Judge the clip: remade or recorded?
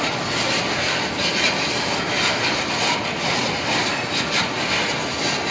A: recorded